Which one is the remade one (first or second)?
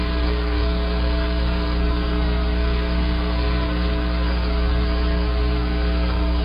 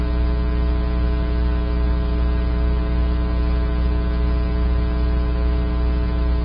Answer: first